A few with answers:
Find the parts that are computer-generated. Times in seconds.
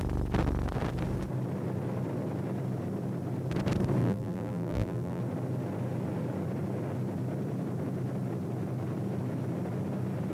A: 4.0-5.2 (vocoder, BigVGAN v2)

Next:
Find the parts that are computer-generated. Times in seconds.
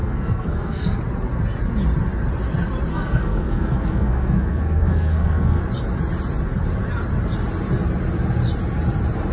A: 0.0-1.0 (codec, SNAC); 2.9-5.6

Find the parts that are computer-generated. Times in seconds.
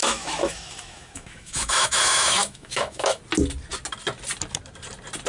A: 0.0-3.2 (autoencoder, DAC-VAE)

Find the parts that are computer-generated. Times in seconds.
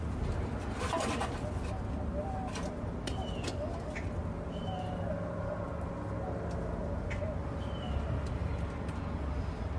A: none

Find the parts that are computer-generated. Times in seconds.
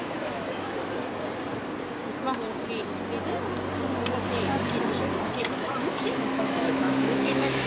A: 0.0-0.8 (autoencoder, DAC-VAE); 5.4-7.7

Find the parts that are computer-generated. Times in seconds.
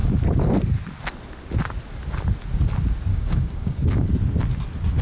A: 3.1-4.1 (codec, DAC)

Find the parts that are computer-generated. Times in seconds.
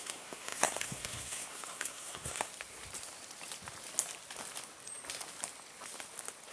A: 0.0-2.5 (codec, SNAC)